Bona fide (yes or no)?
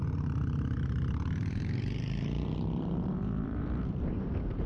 no